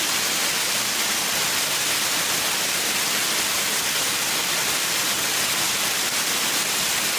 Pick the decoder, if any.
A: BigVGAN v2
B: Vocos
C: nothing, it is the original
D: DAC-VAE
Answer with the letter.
C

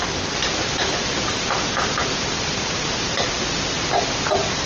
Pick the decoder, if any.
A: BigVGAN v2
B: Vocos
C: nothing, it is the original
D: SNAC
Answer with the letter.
A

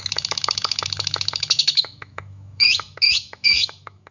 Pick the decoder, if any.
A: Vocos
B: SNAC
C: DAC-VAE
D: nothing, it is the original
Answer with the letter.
C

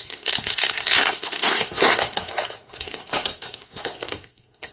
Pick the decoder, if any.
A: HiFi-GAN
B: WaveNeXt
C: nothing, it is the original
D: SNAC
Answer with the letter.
D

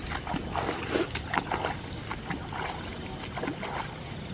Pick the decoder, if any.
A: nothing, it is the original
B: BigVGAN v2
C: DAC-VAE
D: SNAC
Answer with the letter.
A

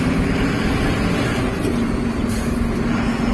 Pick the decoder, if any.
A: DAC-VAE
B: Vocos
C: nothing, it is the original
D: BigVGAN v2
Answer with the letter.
C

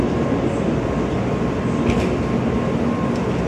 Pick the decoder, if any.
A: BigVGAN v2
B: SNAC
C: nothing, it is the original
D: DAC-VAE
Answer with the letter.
C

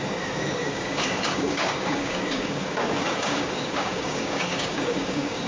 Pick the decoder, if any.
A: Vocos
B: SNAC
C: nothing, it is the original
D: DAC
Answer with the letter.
D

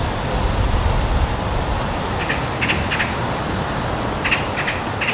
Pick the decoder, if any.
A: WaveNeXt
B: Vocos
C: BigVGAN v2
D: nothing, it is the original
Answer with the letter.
D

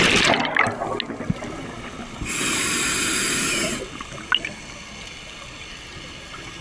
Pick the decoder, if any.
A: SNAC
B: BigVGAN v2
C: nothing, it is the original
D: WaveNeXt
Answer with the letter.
C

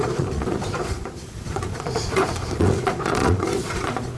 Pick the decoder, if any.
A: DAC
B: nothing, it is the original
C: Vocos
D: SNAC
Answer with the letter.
C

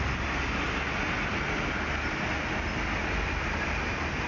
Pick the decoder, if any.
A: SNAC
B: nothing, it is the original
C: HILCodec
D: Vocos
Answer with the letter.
B